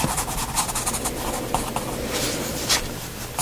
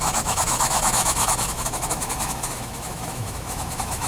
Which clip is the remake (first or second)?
second